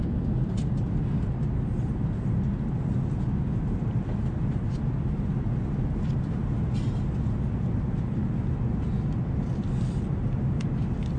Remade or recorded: recorded